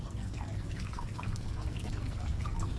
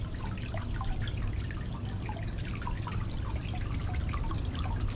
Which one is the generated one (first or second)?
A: first